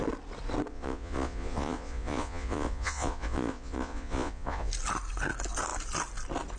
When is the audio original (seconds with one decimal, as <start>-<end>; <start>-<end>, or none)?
0.0-0.7; 4.7-6.6